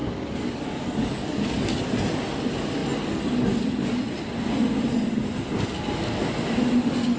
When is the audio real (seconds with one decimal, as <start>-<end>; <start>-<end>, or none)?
1.8-7.2